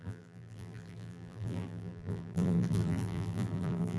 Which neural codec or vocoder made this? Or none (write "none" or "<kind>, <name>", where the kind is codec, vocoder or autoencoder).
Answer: vocoder, BigVGAN v2